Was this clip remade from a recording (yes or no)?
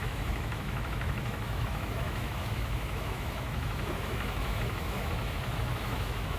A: yes